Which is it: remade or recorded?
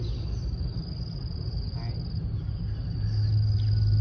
recorded